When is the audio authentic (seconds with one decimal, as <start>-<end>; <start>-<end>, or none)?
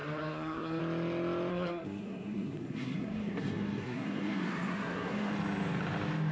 0.8-1.5; 5.3-6.3